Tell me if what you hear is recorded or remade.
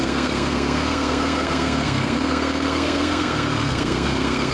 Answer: remade